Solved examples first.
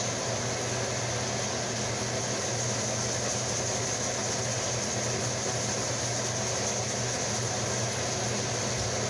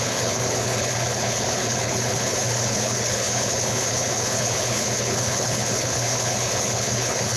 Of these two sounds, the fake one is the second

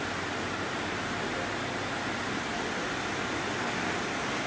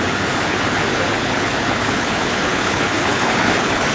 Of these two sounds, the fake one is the second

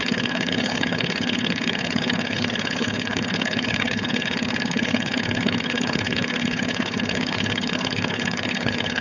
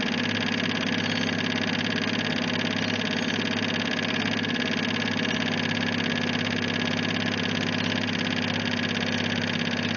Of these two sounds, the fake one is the first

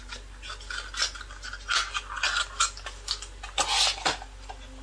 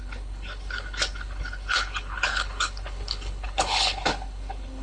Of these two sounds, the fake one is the second